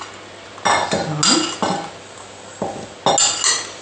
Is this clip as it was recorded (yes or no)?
yes